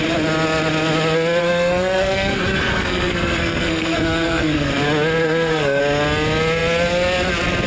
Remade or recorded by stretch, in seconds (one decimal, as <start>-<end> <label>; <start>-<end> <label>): 0.0-1.4 recorded; 1.4-4.7 remade; 4.7-5.2 recorded; 5.2-5.8 remade; 5.8-7.7 recorded